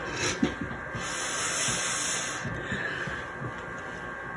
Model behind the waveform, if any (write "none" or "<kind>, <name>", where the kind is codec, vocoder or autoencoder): none